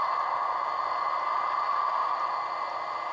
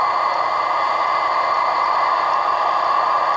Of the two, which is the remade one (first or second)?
second